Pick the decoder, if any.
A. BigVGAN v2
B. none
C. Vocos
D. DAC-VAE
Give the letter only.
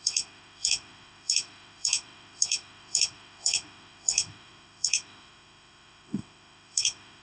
D